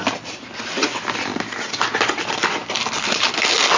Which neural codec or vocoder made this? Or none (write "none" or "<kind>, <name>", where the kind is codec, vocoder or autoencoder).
none